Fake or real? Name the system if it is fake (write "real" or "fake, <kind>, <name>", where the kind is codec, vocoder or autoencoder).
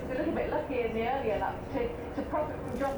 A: real